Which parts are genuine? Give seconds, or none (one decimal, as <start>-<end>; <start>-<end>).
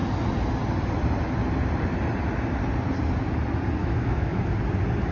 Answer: 0.0-3.8; 4.4-5.1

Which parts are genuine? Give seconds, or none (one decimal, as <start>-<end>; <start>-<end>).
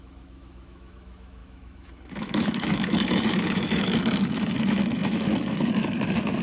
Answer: none